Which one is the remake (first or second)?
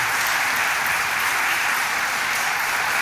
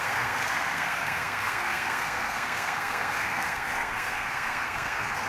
second